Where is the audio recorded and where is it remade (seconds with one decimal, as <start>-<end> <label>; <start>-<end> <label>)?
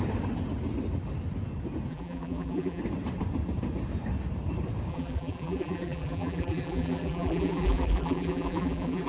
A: 0.0-1.9 recorded; 1.9-2.8 remade; 2.8-4.9 recorded; 4.9-9.1 remade